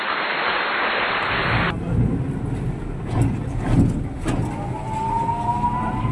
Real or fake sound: real